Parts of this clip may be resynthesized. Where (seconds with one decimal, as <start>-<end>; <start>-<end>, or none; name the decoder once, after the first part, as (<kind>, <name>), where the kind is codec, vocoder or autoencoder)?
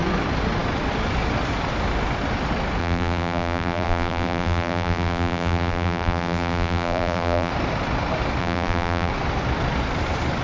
2.8-7.5 (vocoder, BigVGAN v2); 8.4-9.1